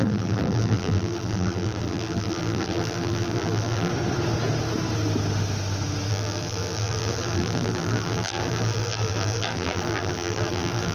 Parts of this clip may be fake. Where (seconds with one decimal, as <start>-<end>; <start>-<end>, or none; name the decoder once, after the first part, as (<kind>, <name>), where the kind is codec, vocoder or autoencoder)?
0.0-3.9 (vocoder, BigVGAN v2); 6.1-10.9